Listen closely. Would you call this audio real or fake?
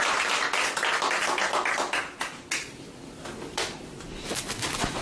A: real